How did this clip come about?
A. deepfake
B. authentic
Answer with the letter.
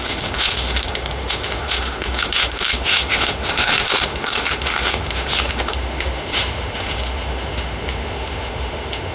A